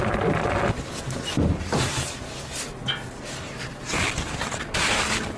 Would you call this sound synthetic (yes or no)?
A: no